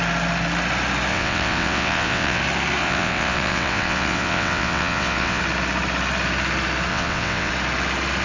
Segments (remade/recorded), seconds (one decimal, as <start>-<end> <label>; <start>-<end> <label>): 0.0-1.1 recorded; 1.1-2.4 remade; 2.4-2.8 recorded; 2.8-5.4 remade; 5.4-6.9 recorded; 6.9-7.5 remade; 7.5-8.2 recorded